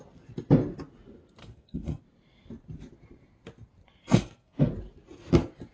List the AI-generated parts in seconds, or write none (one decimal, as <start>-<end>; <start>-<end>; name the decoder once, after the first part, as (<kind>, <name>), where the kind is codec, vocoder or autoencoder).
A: 1.4-2.0 (codec, SNAC); 4.0-4.7